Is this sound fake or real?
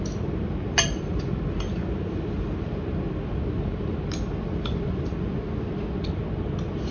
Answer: real